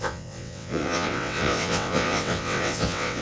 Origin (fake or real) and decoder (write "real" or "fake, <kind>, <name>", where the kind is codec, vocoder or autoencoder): fake, vocoder, WaveNeXt